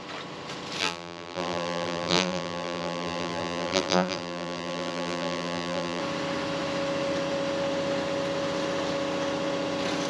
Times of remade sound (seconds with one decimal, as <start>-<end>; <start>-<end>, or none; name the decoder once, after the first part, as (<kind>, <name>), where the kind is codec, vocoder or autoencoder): 0.8-6.0 (vocoder, BigVGAN v2)